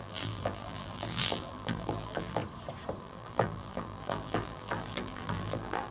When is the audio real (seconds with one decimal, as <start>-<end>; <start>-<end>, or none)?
2.4-3.0